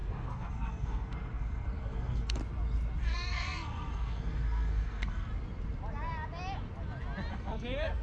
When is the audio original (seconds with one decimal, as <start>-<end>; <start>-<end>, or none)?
2.4-3.0; 5.3-7.3